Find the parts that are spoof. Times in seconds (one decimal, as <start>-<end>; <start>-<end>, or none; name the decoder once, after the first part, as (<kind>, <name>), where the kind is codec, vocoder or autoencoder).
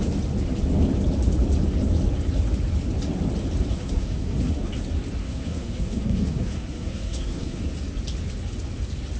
3.7-4.7 (codec, SNAC); 5.2-7.7